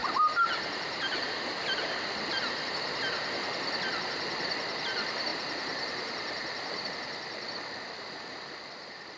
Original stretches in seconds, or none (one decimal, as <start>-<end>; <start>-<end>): 1.9-5.3; 6.9-9.2

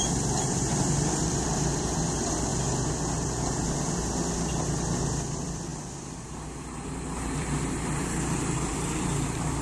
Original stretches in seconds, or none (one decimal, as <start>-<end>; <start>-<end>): 2.5-4.5

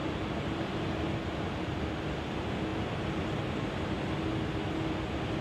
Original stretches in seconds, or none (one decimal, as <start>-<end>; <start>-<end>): 1.8-5.4

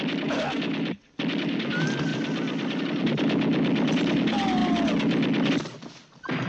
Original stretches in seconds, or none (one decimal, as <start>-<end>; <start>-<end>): 0.0-2.1; 2.8-6.5

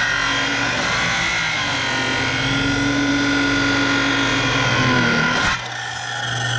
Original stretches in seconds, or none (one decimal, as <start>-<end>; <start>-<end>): 0.0-4.3; 5.4-6.6

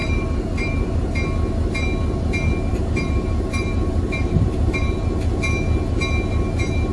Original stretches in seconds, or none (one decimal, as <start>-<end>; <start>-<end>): 1.1-2.7; 5.1-6.9

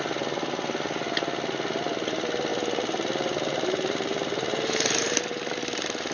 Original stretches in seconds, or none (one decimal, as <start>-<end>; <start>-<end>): 0.0-2.5; 5.2-6.1